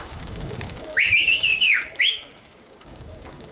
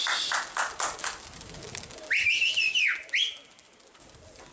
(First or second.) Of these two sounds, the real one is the second